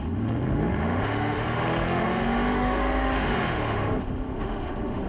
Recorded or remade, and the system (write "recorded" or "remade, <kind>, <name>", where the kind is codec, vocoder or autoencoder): remade, autoencoder, DAC-VAE